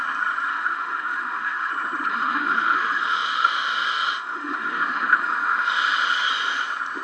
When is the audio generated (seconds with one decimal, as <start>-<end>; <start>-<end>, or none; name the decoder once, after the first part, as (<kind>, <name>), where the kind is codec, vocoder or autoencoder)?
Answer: 0.5-1.7 (autoencoder, DAC-VAE); 2.1-6.3